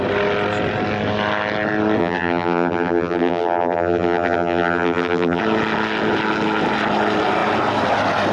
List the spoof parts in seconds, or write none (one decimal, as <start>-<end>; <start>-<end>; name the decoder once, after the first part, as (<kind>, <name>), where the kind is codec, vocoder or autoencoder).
2.0-5.4 (vocoder, BigVGAN v2)